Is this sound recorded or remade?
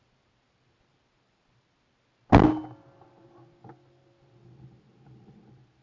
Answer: recorded